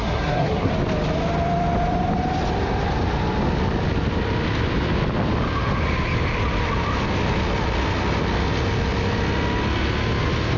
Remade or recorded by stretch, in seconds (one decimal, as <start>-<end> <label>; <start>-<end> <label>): 0.0-0.7 remade; 0.7-10.6 recorded